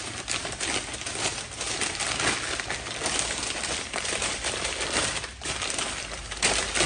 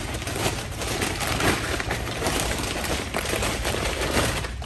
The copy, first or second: second